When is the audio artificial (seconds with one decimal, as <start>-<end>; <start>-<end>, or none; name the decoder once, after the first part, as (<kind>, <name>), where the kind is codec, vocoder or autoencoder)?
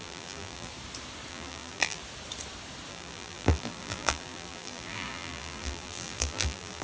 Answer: 0.0-0.7 (vocoder, BigVGAN v2); 1.3-2.0; 2.9-6.8